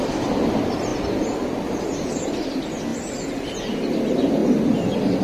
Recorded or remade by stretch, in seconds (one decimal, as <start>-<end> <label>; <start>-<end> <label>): 0.0-2.9 recorded; 2.9-3.7 remade; 3.7-5.2 recorded